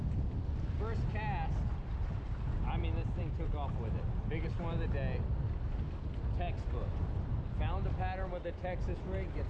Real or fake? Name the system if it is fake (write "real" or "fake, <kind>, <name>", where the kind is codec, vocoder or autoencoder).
real